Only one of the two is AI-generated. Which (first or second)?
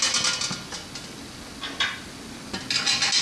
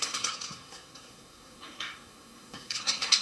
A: second